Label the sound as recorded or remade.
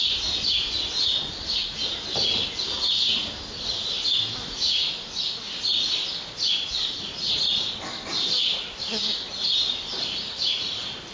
recorded